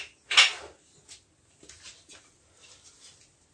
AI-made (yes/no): no